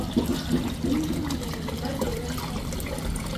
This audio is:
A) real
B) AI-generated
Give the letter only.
A